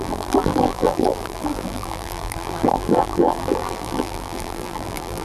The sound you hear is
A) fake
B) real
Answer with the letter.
A